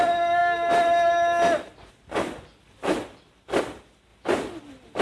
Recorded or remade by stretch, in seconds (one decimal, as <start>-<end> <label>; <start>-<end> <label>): 0.0-5.0 recorded